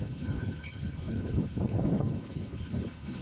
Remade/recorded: remade